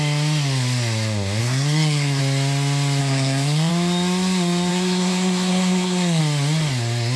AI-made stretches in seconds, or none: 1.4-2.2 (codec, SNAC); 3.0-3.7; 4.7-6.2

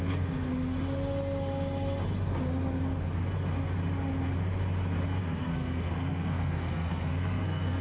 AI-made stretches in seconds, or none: 0.0-0.5 (codec, SNAC); 5.2-7.8

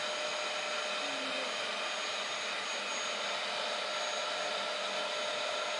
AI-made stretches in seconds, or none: none

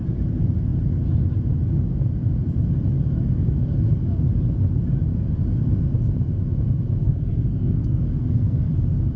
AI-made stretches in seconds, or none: 7.0-8.7 (codec, SNAC)

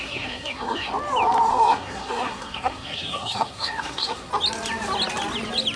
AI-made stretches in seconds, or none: 0.0-0.9 (codec, SNAC); 1.5-4.3

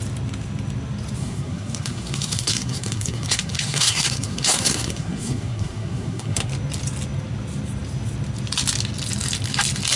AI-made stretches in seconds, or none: 1.2-6.5 (codec, SNAC)

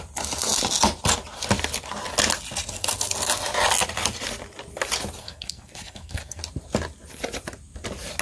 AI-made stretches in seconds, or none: 5.2-6.4 (codec, SNAC)